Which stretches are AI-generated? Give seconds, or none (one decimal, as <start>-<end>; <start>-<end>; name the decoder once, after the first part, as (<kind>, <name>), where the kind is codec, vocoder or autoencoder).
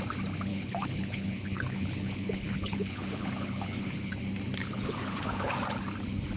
0.5-4.1 (codec, HILCodec); 4.6-5.5